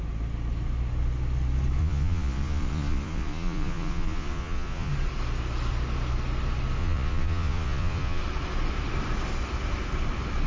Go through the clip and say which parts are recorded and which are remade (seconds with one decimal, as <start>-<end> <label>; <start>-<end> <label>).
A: 0.0-1.8 recorded; 1.8-4.9 remade; 4.9-6.8 recorded; 6.8-8.2 remade; 8.2-10.5 recorded